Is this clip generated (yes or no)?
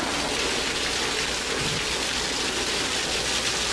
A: no